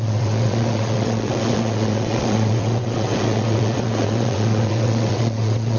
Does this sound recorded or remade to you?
remade